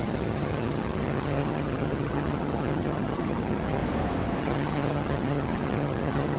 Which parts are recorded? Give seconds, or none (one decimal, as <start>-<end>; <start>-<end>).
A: 3.8-4.4